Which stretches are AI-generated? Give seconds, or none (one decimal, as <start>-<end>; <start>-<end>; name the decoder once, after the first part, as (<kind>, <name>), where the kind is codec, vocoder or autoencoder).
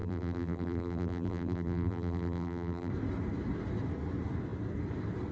0.0-2.9 (vocoder, BigVGAN v2)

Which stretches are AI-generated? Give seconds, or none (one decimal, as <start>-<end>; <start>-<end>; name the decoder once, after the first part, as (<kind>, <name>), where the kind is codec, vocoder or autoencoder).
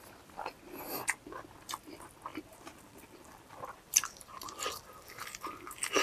2.3-5.3 (vocoder, BigVGAN v2)